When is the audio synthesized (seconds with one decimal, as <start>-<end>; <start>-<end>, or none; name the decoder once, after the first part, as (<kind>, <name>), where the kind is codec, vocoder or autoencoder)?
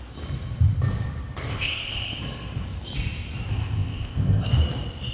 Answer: 1.5-2.2 (codec, ZipCodec); 3.5-4.5